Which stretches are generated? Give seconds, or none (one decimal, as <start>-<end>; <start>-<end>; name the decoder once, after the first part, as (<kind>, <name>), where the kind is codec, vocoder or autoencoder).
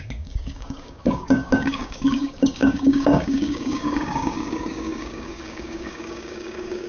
0.0-6.9 (codec, DAC)